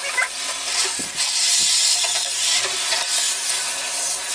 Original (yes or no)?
yes